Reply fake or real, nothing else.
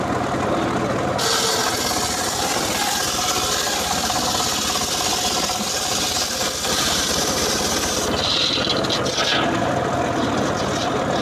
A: real